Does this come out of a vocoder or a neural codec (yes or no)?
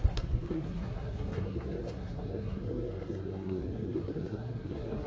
yes